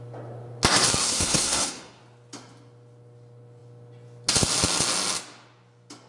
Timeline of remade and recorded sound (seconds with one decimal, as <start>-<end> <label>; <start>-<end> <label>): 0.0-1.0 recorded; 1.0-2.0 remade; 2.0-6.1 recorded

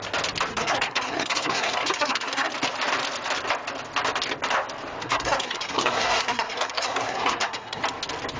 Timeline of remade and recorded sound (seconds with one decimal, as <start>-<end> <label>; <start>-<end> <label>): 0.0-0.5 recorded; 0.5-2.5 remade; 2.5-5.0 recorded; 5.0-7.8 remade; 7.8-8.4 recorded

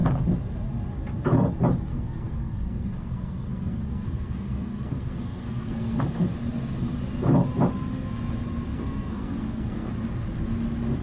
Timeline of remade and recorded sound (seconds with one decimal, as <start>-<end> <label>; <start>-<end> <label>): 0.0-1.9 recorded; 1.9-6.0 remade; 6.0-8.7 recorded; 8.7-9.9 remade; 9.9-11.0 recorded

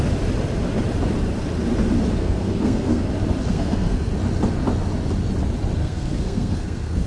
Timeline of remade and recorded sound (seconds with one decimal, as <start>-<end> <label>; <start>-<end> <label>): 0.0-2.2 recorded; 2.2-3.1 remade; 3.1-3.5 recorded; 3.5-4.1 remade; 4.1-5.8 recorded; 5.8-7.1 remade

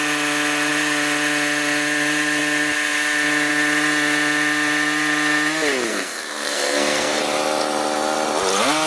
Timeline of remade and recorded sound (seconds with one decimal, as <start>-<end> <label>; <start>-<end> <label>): 0.0-5.9 recorded; 5.9-7.2 remade; 7.2-8.9 recorded

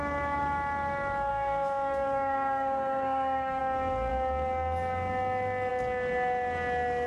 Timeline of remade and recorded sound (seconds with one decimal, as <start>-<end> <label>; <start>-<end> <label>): 0.0-1.3 recorded; 1.3-3.6 remade; 3.6-7.1 recorded